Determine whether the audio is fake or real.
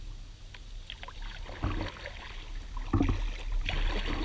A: real